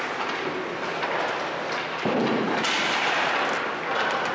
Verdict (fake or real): real